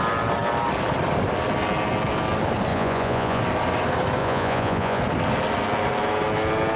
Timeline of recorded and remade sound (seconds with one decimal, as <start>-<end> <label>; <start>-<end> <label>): 0.0-2.7 recorded; 2.7-3.4 remade; 3.4-4.2 recorded; 4.2-5.0 remade; 5.0-6.8 recorded